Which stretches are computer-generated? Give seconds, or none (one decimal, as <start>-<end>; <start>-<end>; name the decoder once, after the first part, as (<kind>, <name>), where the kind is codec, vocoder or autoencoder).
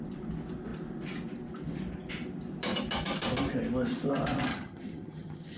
4.5-5.6 (vocoder, HiFi-GAN)